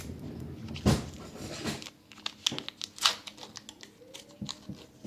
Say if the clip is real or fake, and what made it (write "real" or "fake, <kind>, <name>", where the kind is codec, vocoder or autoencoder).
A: real